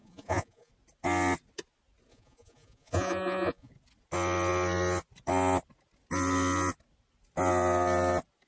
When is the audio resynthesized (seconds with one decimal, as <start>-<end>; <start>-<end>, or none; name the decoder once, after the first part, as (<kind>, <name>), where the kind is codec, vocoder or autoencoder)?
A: 0.0-0.7 (vocoder, Vocos); 2.1-3.7